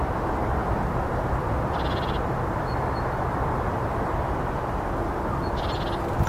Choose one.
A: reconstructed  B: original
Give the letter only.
B